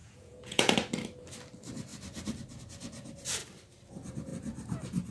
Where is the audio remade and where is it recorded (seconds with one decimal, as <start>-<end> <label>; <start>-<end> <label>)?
0.0-0.7 remade; 0.7-5.1 recorded